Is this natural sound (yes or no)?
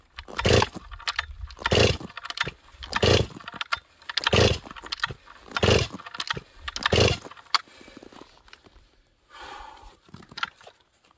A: yes